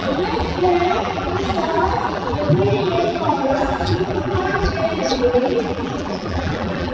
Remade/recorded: remade